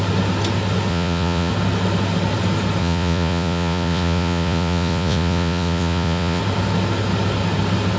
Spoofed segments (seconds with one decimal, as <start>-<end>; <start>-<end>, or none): 0.9-1.5; 2.8-6.4